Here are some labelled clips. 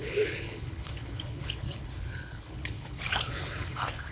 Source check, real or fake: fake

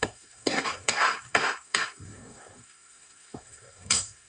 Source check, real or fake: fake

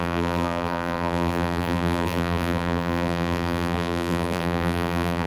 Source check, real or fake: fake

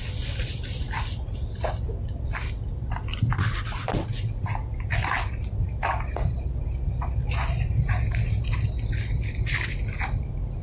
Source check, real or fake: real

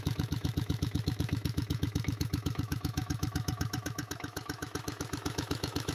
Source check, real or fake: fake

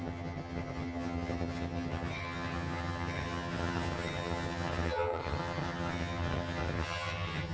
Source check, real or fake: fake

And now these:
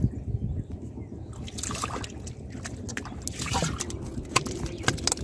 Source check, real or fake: real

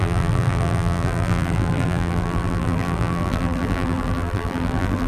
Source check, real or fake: fake